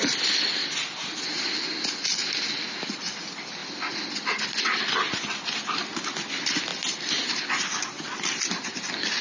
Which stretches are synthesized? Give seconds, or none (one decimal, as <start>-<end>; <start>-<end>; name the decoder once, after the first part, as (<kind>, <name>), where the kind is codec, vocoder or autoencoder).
0.0-0.6 (vocoder, BigVGAN v2); 2.8-3.6; 4.4-9.2

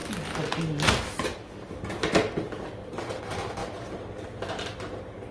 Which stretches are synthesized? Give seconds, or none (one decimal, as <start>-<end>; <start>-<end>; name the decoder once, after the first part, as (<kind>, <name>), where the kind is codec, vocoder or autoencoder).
3.2-3.6 (vocoder, BigVGAN v2); 4.5-5.3

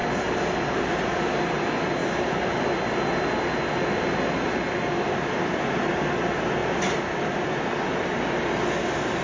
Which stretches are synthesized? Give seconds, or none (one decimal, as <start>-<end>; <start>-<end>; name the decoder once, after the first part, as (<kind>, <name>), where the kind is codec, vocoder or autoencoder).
none

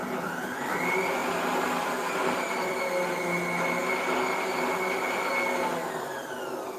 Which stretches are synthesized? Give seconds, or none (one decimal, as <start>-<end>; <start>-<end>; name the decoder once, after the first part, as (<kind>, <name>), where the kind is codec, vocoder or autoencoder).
none

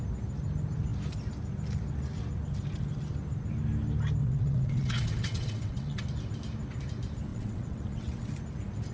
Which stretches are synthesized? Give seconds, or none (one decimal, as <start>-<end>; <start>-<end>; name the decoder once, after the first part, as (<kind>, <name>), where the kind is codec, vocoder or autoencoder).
4.2-6.0 (vocoder, WaveNeXt); 7.3-8.3

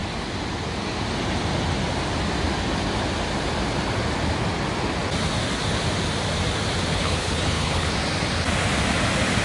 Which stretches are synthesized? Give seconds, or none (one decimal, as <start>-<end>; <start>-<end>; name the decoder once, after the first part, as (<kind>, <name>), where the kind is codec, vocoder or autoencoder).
6.9-7.9 (codec, HILCodec)

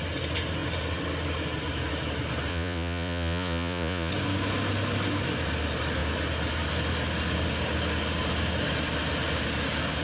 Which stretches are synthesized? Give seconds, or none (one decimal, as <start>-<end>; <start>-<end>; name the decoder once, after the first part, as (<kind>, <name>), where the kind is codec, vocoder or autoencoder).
2.5-4.1 (vocoder, Vocos)

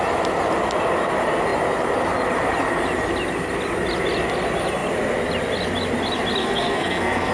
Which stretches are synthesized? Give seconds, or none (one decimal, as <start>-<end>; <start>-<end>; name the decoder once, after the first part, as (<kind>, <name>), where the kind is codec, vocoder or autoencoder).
6.4-7.3 (codec, SNAC)